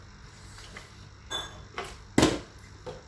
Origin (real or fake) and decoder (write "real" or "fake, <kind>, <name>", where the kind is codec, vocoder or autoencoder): real